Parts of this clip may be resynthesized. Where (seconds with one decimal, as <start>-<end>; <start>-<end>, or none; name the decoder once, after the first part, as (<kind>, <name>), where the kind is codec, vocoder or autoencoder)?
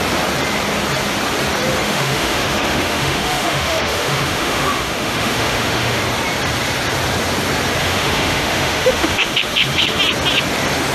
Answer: 1.8-6.0 (autoencoder, DAC-VAE); 7.8-10.0